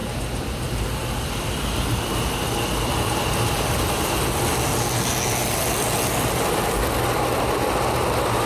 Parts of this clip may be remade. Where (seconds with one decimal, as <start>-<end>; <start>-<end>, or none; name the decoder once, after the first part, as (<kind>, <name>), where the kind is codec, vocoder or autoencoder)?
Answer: 0.0-1.3 (vocoder, BigVGAN v2); 5.4-6.0